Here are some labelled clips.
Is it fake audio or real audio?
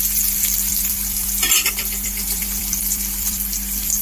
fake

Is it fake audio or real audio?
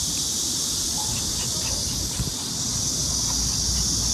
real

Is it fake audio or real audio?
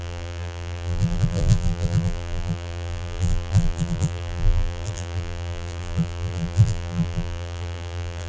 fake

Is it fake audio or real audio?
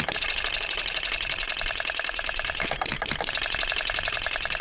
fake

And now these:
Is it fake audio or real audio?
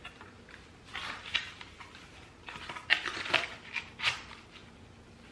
real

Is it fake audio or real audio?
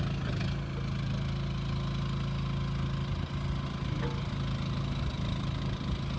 real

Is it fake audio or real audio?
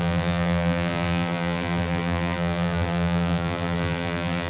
fake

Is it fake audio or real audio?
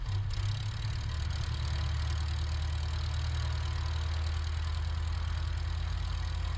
real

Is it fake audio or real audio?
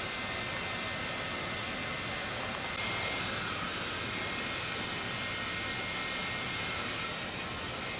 real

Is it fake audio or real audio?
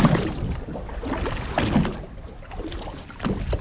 real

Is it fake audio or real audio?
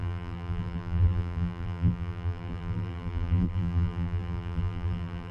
fake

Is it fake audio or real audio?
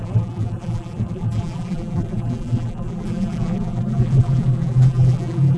fake